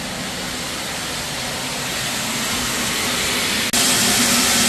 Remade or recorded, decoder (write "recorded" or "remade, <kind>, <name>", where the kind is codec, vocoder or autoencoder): recorded